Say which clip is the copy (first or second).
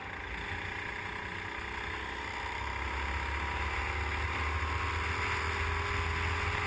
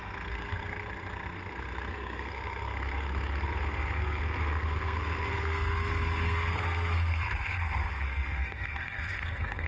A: second